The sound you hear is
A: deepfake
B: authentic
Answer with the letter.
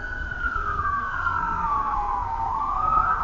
A